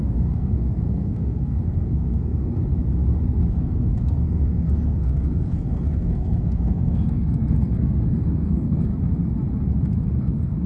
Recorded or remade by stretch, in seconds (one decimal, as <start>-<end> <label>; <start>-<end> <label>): 0.0-2.6 remade; 2.6-3.5 recorded; 3.5-8.9 remade; 8.9-10.2 recorded; 10.2-10.7 remade